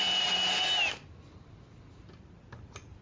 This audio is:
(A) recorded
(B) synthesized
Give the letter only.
A